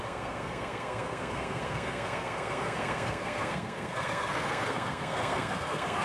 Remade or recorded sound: remade